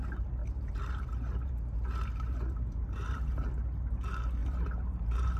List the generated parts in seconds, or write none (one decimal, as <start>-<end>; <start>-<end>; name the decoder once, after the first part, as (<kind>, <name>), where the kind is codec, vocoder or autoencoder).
0.4-3.3 (vocoder, BigVGAN v2); 4.4-5.4